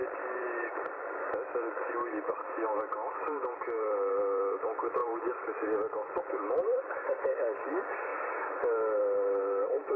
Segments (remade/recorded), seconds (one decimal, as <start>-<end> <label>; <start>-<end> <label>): 0.0-10.0 recorded